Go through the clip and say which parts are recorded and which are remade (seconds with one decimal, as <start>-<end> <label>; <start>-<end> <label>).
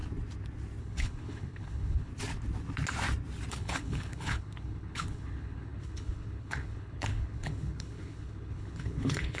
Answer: 0.0-0.8 recorded; 0.8-2.1 remade; 2.1-3.5 recorded; 3.5-9.4 remade